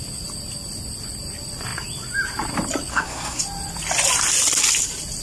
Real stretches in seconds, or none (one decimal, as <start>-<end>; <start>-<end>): 0.0-2.9; 3.4-5.2